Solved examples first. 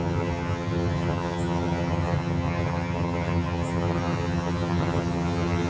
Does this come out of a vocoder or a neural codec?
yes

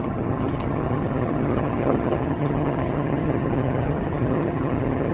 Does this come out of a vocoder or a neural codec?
yes